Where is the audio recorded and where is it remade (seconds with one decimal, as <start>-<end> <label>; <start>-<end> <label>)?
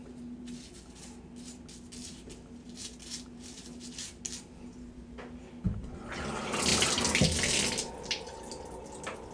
0.0-9.3 recorded